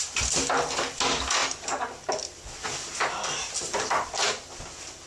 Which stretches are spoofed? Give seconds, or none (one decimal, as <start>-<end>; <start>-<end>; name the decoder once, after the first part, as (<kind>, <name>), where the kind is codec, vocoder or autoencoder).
none